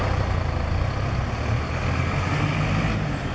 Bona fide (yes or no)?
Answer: yes